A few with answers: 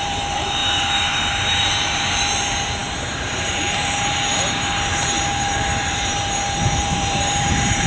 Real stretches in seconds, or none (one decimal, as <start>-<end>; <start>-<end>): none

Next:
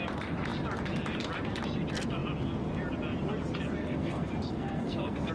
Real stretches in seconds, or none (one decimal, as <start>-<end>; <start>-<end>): 0.0-3.8

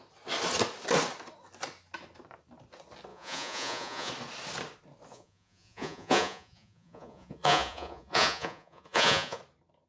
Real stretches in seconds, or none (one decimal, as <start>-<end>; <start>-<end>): 0.0-3.1; 4.1-5.1; 9.4-9.9

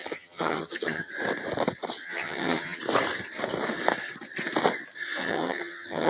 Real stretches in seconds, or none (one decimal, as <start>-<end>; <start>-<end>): 1.1-2.0; 2.8-5.2